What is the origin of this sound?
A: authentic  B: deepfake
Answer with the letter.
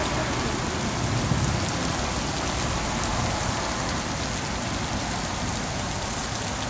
A